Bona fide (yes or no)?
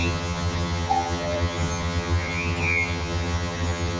no